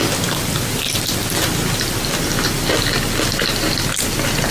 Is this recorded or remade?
remade